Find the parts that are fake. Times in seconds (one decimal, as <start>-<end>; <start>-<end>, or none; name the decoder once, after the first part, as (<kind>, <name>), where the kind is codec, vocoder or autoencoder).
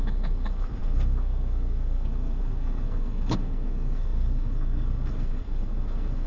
0.0-6.3 (codec, SNAC)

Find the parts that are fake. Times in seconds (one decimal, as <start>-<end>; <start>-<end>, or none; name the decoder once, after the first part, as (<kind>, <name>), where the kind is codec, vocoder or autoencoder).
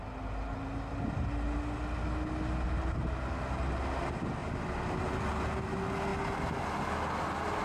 none